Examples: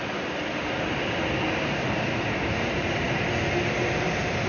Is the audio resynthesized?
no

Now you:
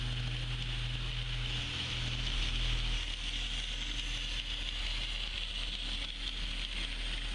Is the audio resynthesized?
no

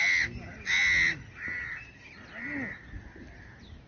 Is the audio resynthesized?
no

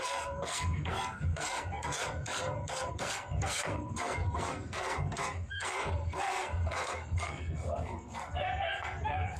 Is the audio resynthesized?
yes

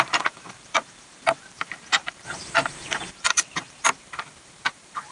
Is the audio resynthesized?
yes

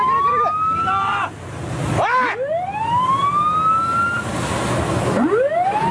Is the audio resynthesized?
no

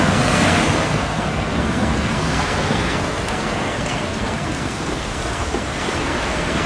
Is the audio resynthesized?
yes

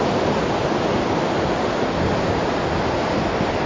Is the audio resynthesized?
no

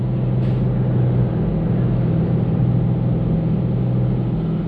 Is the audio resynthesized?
no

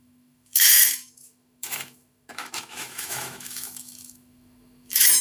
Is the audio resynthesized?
yes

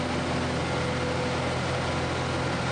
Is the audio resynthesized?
no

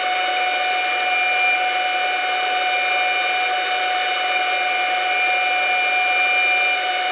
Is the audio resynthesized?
no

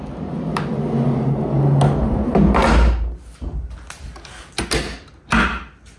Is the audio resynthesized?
no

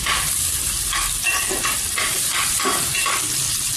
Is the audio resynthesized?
no